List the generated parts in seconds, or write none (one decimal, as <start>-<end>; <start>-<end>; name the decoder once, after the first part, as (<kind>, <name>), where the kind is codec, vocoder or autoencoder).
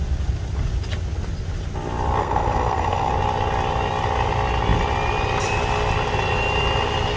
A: 2.2-3.1 (codec, SNAC)